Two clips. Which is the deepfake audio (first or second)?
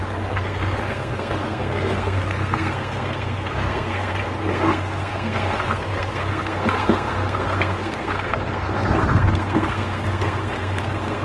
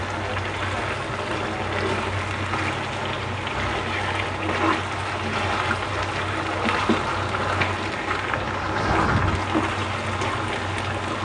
first